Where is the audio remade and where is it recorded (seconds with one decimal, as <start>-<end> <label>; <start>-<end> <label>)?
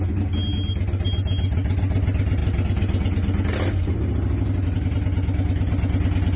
0.0-6.4 recorded